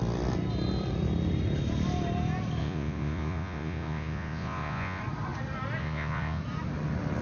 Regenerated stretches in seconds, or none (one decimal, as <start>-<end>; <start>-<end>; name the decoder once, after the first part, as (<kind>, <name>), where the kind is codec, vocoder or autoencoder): 2.6-5.0 (vocoder, Vocos); 5.8-6.4